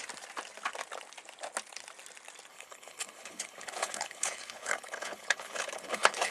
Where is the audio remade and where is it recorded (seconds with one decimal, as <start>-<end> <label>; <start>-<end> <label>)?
0.0-2.5 recorded; 2.5-6.3 remade